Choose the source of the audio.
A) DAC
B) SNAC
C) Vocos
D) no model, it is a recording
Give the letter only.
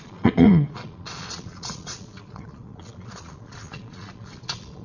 C